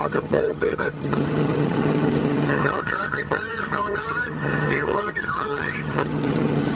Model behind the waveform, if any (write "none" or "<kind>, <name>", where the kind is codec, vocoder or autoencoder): vocoder, HiFi-GAN